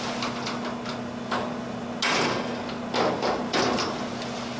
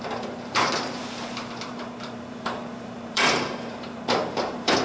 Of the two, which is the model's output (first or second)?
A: second